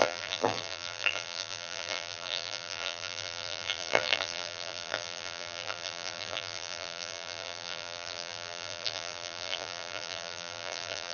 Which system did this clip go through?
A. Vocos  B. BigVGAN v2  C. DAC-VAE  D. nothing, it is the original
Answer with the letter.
B